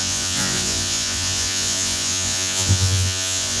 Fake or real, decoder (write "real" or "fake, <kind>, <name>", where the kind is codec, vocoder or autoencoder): fake, vocoder, Vocos